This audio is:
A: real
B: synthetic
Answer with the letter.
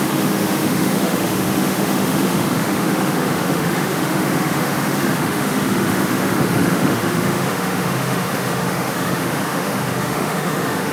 B